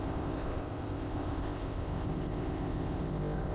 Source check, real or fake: fake